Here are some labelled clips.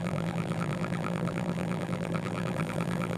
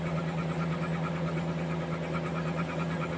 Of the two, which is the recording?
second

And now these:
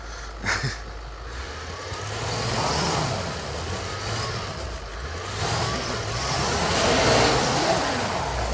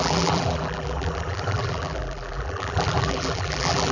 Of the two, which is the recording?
first